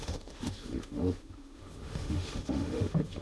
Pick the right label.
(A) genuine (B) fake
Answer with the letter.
B